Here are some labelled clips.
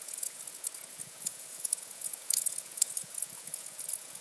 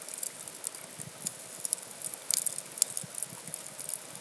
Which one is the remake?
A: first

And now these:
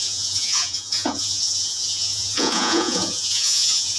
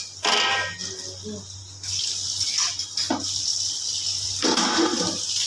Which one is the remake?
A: first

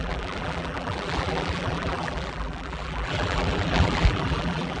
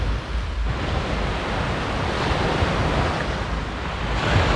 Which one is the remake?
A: first